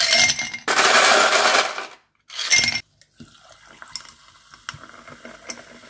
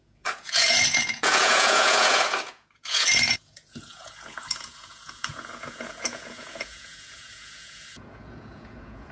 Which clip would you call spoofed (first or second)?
second